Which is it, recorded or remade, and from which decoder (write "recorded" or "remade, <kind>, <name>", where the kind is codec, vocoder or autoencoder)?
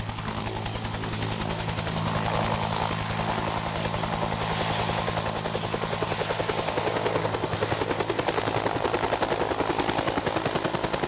recorded